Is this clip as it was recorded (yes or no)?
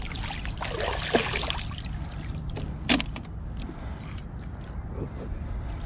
yes